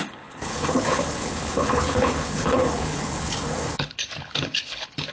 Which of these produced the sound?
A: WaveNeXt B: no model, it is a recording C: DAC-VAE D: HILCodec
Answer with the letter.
D